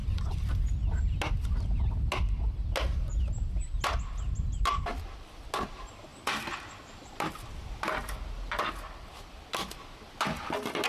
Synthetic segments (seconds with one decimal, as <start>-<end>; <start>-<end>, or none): none